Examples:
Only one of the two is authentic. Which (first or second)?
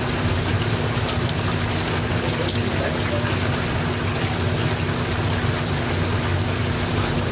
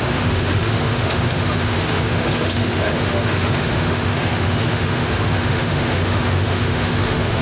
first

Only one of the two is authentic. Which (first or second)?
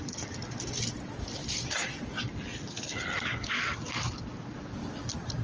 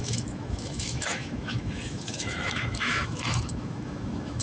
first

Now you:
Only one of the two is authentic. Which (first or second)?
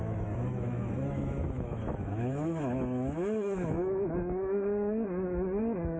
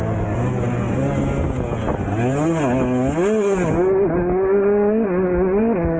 second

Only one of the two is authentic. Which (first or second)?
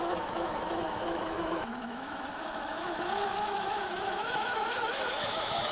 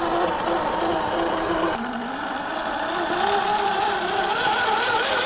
second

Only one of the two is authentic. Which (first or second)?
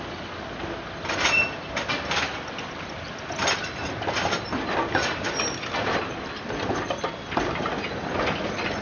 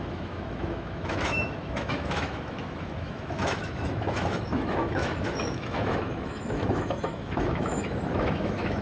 first